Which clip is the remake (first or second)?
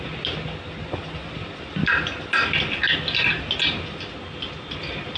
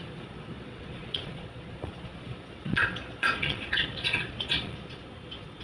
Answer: second